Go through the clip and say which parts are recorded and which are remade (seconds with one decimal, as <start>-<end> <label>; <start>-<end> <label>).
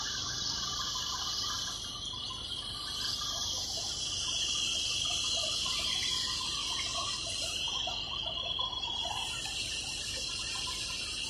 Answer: 0.0-6.9 recorded; 6.9-7.8 remade; 7.8-11.3 recorded